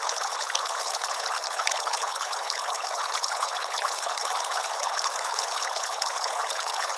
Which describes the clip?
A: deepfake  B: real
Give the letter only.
A